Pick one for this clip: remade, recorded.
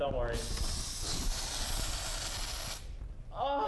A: recorded